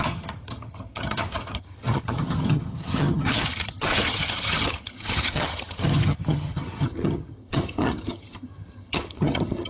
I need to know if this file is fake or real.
fake